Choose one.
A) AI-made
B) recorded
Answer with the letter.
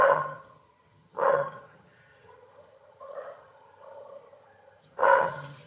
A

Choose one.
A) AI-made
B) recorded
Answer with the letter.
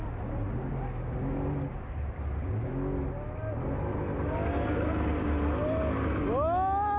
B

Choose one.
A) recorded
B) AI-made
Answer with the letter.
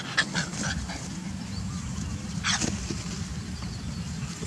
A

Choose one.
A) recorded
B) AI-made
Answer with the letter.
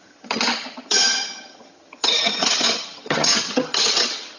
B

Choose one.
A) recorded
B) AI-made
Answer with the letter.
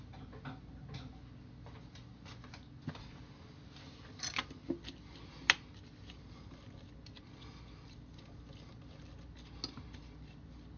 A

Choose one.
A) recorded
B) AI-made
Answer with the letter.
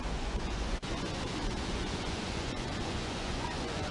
B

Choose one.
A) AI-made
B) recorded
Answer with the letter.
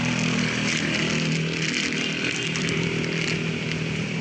B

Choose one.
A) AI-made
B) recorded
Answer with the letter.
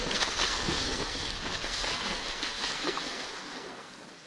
A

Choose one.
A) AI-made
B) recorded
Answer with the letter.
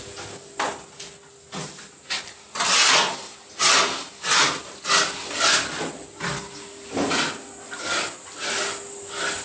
B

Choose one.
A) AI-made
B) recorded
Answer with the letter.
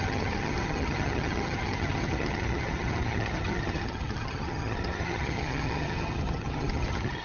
A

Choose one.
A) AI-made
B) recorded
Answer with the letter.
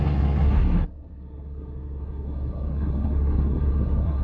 A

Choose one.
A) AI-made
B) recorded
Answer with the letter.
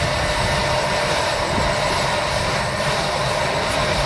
B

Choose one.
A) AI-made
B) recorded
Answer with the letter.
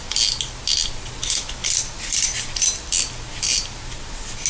B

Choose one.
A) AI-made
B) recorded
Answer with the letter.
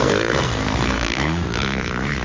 A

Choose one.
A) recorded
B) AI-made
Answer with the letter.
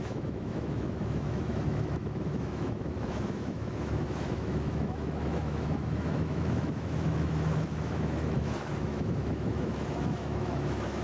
B